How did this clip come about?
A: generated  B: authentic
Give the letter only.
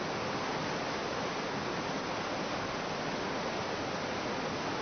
B